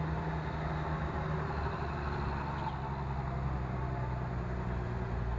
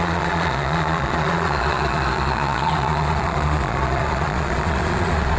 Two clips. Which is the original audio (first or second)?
first